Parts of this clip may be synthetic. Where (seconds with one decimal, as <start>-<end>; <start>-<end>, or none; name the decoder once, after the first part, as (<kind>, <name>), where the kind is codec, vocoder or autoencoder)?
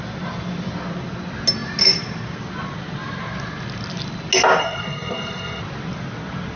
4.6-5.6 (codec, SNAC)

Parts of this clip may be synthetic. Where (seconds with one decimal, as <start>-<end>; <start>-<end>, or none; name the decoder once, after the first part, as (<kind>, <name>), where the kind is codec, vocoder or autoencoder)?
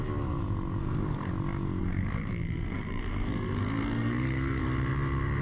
0.8-1.3 (codec, SNAC); 1.8-4.6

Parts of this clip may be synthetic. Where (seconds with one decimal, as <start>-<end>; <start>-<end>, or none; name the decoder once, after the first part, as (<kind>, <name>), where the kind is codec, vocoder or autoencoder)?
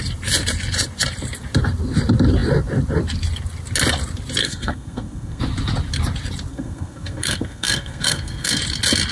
4.4-5.4 (codec, SNAC); 6.5-8.6